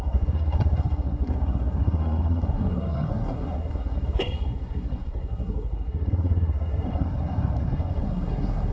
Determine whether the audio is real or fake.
fake